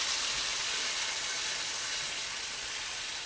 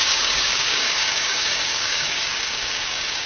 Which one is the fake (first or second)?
second